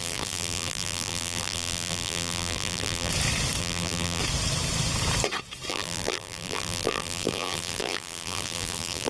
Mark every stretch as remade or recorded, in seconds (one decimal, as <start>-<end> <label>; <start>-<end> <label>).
0.0-3.1 remade; 3.1-3.6 recorded; 3.6-4.2 remade; 4.2-5.7 recorded; 5.7-9.1 remade